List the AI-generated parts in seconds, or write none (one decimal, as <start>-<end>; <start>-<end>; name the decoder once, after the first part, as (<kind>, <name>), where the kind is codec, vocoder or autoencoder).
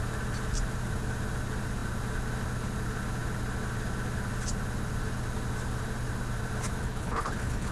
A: 6.8-7.7 (codec, HILCodec)